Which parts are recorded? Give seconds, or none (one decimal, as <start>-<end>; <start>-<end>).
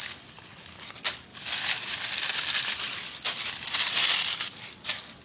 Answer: 0.0-5.2